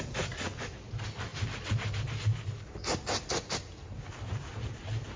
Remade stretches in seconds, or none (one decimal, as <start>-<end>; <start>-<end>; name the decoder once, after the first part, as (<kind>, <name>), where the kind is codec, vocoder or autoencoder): none